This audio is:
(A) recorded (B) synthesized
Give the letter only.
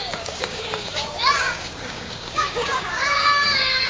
B